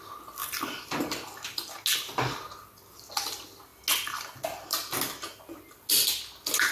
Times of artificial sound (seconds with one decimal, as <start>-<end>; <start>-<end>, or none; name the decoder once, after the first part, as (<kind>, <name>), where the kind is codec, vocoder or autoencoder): none